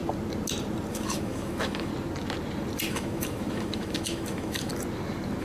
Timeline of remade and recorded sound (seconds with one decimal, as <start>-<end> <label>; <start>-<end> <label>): 0.0-0.9 recorded; 0.9-1.9 remade; 1.9-2.9 recorded; 2.9-4.7 remade; 4.7-5.4 recorded